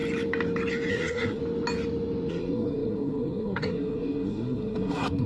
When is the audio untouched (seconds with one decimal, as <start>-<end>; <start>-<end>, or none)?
0.0-0.9; 1.4-2.3